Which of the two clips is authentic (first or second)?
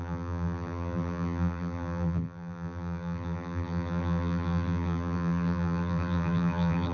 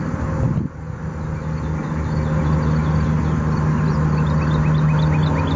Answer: second